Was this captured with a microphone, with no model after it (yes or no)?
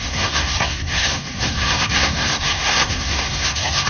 no